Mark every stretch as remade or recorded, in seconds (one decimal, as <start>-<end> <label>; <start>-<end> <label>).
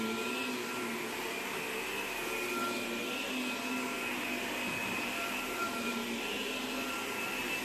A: 0.0-4.8 recorded; 4.8-5.9 remade; 5.9-7.6 recorded